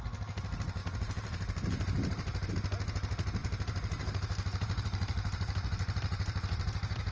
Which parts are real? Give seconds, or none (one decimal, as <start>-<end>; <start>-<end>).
0.0-0.8; 2.5-3.4